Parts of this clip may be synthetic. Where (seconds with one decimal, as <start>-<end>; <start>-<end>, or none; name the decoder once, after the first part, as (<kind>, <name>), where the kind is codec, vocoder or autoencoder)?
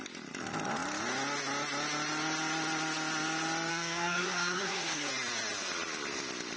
3.7-5.1 (codec, SNAC)